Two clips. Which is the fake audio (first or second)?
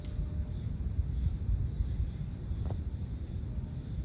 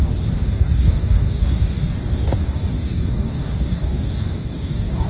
second